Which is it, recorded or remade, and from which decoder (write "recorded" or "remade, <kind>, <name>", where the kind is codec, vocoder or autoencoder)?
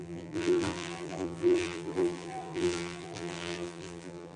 remade, vocoder, BigVGAN v2